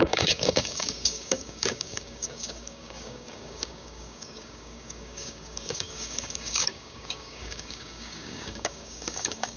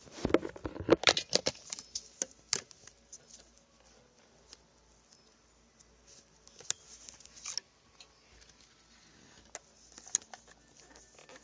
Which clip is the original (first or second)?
second